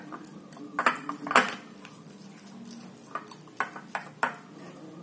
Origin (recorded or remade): recorded